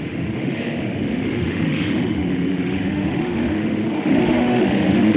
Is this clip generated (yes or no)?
yes